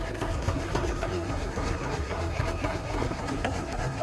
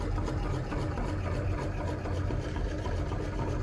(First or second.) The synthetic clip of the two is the first